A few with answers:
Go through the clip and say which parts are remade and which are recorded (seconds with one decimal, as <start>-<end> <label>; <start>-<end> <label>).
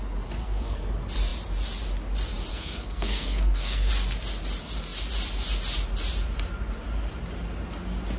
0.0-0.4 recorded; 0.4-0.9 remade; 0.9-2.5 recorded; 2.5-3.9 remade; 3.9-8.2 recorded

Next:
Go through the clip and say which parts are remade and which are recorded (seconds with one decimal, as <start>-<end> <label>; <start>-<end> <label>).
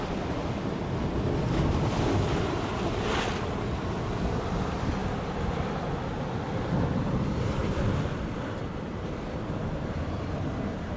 0.0-11.0 recorded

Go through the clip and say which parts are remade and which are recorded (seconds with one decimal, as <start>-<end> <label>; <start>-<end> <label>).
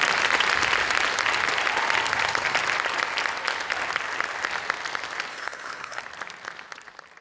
0.0-5.3 recorded; 5.3-6.0 remade; 6.0-7.2 recorded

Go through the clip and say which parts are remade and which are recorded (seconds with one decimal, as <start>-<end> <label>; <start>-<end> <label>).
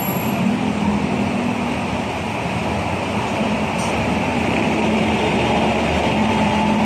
0.0-6.8 recorded